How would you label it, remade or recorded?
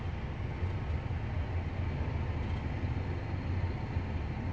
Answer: recorded